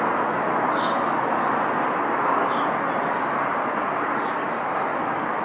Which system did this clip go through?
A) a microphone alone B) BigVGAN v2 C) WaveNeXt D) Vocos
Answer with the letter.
A